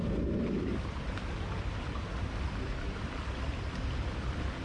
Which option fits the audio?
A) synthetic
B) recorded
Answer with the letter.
B